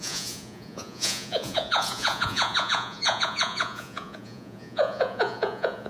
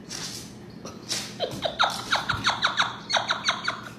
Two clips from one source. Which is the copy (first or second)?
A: first